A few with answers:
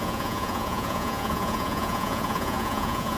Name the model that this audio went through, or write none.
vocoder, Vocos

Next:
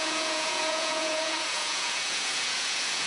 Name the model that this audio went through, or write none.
vocoder, Vocos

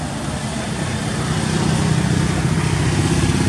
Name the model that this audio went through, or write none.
none